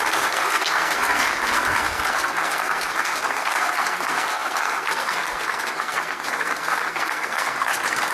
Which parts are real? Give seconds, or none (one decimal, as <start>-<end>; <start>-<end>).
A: none